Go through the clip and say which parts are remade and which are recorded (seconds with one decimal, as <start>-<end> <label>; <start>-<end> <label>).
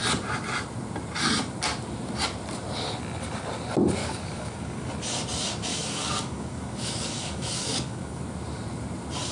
0.0-4.0 recorded; 4.0-4.9 remade; 4.9-5.7 recorded; 5.7-8.2 remade; 8.2-9.3 recorded